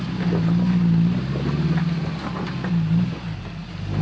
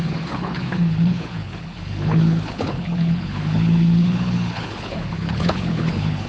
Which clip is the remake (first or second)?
second